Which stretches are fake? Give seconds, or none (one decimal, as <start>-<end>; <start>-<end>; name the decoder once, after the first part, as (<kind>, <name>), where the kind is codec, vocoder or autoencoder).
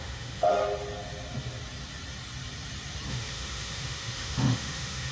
0.0-0.6 (autoencoder, DAC-VAE); 3.1-5.1